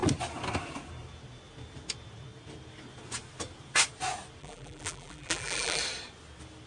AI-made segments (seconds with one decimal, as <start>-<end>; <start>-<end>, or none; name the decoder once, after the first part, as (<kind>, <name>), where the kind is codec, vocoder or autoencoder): 4.4-5.8 (vocoder, BigVGAN v2)